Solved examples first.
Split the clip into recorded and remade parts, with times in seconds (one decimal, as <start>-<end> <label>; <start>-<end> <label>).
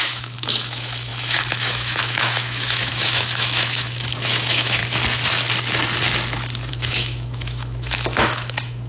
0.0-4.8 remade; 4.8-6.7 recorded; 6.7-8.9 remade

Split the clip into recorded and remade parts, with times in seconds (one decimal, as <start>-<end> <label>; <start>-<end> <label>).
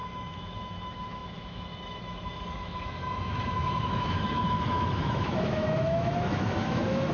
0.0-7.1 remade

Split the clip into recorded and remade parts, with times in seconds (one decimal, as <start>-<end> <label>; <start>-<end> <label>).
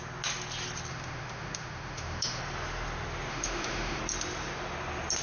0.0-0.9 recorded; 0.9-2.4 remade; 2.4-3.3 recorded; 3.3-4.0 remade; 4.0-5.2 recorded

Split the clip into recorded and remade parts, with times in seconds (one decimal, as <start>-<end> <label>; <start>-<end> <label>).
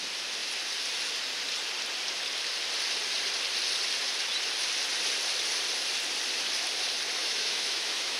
0.0-7.2 recorded; 7.2-8.2 remade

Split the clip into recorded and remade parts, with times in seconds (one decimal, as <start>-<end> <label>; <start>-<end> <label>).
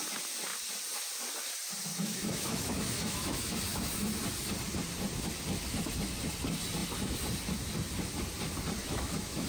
0.0-1.9 recorded; 1.9-4.2 remade; 4.2-8.8 recorded; 8.8-9.5 remade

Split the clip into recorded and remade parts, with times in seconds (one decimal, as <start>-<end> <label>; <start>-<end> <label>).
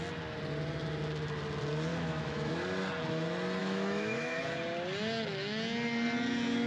0.0-1.9 recorded; 1.9-2.5 remade; 2.5-3.6 recorded; 3.6-4.4 remade; 4.4-6.7 recorded